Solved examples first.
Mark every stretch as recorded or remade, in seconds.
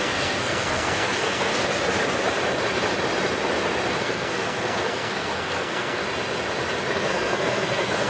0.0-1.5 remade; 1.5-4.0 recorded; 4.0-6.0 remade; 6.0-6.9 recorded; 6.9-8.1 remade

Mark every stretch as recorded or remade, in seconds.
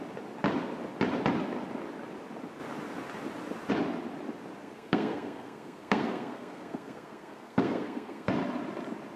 0.0-4.6 recorded; 4.6-8.3 remade; 8.3-9.2 recorded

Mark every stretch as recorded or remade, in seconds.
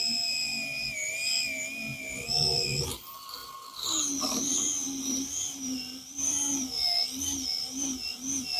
0.0-3.4 recorded; 3.4-4.2 remade; 4.2-4.8 recorded; 4.8-8.6 remade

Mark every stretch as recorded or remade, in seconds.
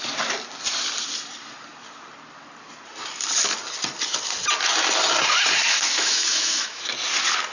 0.0-5.7 recorded; 5.7-6.9 remade; 6.9-7.5 recorded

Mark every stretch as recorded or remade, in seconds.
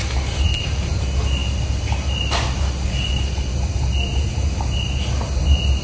0.0-5.8 recorded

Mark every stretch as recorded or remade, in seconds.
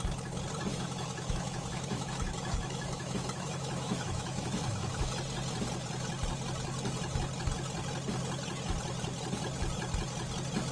0.0-0.7 recorded; 0.7-5.1 remade; 5.1-10.7 recorded